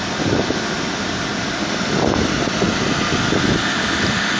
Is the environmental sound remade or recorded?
recorded